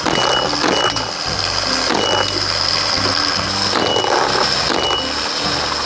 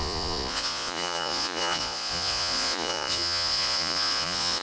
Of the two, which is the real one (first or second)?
first